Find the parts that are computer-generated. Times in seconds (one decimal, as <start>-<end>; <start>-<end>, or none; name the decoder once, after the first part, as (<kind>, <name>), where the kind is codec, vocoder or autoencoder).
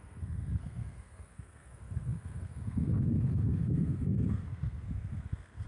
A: 0.0-5.7 (codec, SNAC)